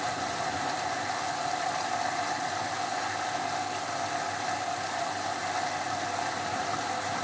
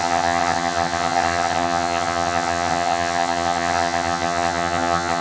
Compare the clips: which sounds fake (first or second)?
second